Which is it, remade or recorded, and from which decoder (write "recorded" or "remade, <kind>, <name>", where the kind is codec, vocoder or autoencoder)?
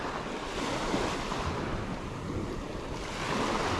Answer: recorded